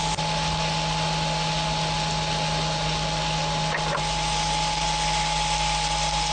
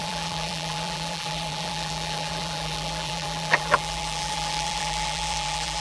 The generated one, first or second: second